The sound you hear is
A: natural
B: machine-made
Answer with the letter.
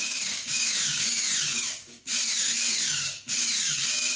B